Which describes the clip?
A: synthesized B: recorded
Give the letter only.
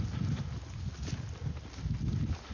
B